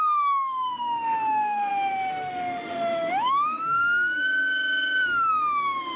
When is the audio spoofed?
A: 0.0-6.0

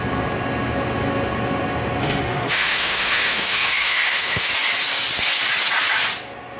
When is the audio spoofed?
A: 2.0-4.5

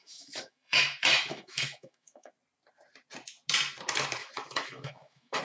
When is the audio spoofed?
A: 0.0-2.3; 4.2-5.4

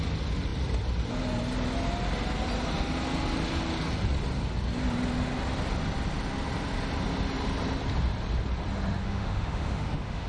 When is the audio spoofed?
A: 9.0-10.3

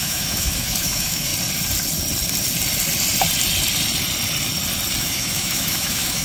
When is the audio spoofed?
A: 0.0-1.3; 5.0-6.2